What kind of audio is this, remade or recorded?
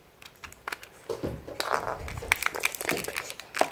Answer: recorded